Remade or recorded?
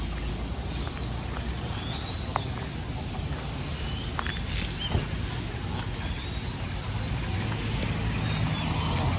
recorded